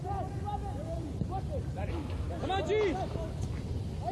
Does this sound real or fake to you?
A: real